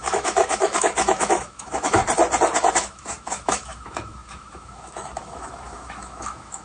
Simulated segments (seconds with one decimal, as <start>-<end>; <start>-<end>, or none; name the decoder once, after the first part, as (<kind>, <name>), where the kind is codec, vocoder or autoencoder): 0.0-2.0 (autoencoder, DAC-VAE); 2.7-6.6